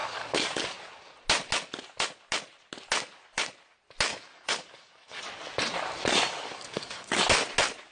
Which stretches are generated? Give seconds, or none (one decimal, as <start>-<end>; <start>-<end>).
0.0-0.6; 4.1-5.2; 6.3-7.2